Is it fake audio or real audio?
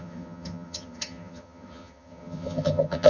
fake